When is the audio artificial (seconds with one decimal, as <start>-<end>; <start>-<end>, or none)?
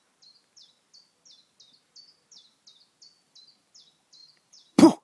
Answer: 4.2-5.0